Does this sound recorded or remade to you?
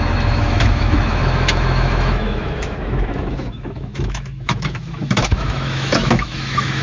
remade